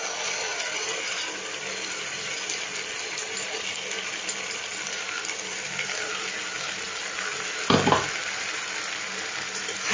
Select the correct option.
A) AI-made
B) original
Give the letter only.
B